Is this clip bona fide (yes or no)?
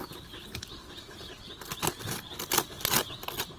yes